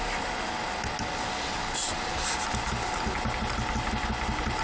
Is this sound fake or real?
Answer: real